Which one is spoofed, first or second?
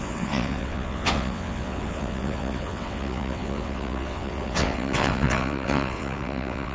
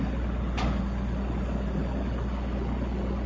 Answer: first